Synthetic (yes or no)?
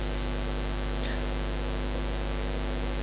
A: no